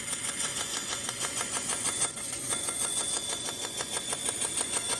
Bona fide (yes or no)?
no